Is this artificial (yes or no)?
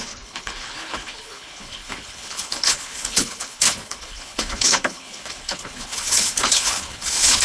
yes